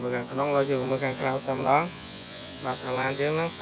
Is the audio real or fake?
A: fake